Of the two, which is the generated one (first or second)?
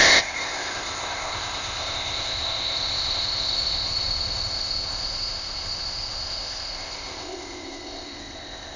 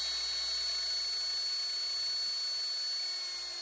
first